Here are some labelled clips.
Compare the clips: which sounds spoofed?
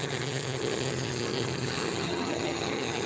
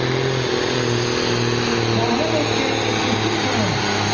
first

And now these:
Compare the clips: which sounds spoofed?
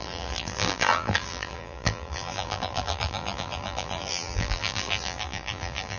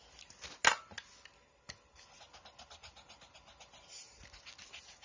first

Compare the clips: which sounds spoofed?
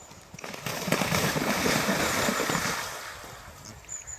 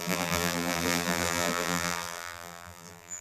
second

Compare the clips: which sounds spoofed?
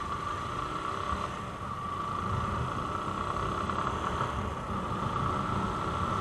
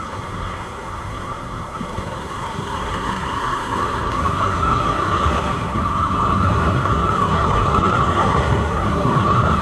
second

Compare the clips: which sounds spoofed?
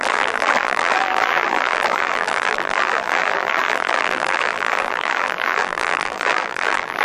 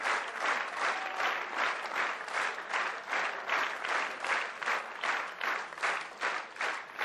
first